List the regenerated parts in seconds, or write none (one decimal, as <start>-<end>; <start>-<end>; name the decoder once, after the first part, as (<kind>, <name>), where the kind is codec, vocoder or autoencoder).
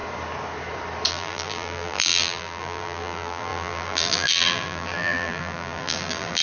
1.1-6.4 (vocoder, BigVGAN v2)